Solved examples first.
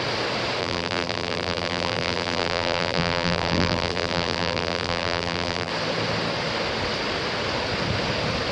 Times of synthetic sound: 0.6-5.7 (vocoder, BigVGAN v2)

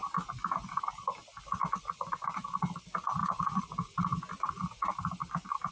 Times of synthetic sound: 1.6-3.2 (vocoder, BigVGAN v2)

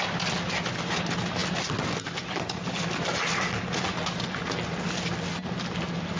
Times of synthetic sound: none